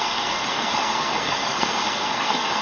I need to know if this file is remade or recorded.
remade